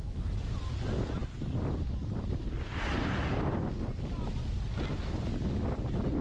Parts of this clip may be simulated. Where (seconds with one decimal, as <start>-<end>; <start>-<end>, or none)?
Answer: none